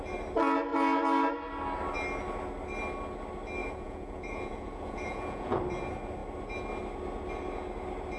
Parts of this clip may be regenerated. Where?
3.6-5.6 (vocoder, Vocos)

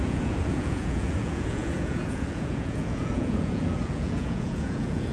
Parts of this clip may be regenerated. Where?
0.0-5.1 (vocoder, Vocos)

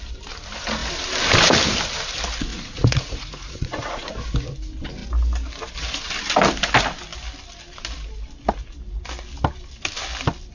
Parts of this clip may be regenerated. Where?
2.5-4.1 (vocoder, Vocos)

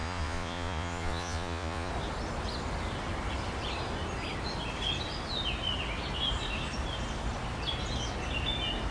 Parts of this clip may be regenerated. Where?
0.0-1.9 (vocoder, Vocos)

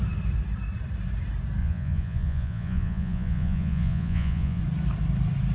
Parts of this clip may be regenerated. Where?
1.6-4.6 (vocoder, Vocos)

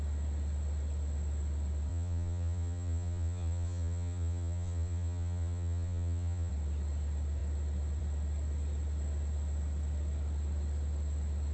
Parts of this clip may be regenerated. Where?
1.9-6.5 (vocoder, Vocos)